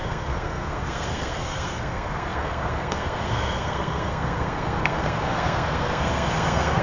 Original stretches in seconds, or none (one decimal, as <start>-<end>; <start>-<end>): none